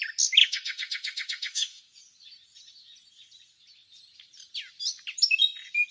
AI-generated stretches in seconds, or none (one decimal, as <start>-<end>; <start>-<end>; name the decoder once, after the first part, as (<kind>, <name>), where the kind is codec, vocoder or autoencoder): 0.4-1.8 (autoencoder, DAC-VAE)